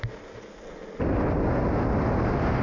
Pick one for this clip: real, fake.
real